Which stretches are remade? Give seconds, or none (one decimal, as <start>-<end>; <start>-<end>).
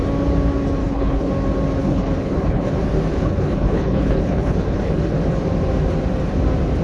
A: 0.8-1.3; 1.8-2.7; 3.1-5.2